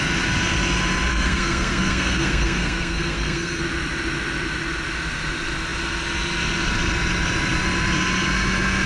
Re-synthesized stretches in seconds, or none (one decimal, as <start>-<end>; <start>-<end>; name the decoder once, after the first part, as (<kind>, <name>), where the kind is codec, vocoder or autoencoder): 1.1-3.6 (codec, SNAC)